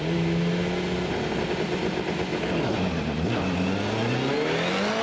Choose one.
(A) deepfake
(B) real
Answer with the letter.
B